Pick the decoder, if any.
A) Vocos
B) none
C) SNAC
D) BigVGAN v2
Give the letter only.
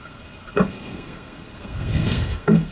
C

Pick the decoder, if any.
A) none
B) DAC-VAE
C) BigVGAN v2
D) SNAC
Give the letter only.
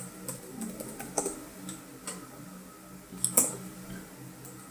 A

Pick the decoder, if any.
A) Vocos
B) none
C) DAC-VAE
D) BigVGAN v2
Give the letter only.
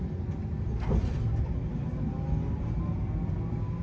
B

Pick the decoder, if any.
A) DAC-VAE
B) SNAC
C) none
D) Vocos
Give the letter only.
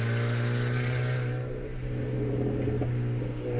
C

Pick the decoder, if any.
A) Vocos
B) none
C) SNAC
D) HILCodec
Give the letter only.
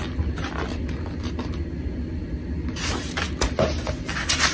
B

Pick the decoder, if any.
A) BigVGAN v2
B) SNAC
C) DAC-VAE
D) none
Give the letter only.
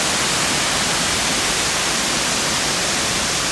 D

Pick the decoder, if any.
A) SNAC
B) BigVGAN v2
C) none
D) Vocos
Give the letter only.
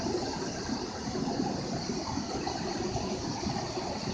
C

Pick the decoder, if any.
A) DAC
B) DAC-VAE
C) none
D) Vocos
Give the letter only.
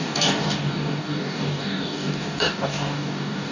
A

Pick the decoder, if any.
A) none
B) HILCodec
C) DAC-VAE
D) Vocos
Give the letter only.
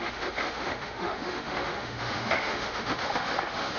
C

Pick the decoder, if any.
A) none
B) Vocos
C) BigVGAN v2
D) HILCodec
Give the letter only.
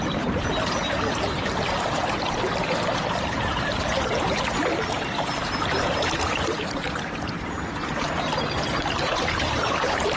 C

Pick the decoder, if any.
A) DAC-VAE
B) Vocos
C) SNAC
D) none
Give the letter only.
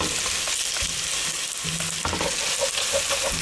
D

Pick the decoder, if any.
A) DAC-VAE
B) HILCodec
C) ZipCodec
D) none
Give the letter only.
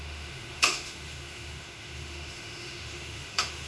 A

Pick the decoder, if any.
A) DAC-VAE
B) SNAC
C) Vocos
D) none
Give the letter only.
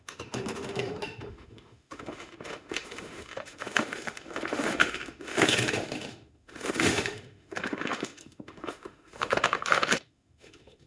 A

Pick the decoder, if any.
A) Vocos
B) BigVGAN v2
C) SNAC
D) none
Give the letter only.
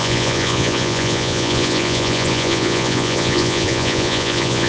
A